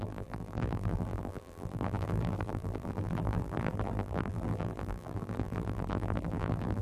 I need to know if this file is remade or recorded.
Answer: remade